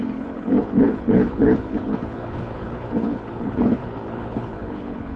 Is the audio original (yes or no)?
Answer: no